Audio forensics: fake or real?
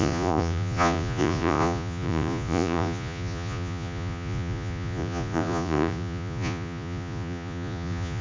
fake